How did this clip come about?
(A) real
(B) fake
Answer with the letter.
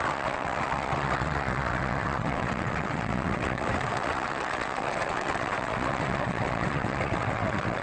B